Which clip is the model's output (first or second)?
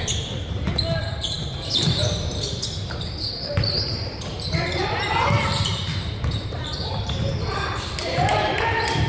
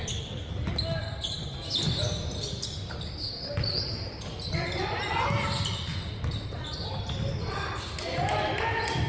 first